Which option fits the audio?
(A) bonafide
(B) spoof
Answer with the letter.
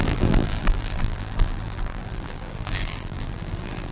B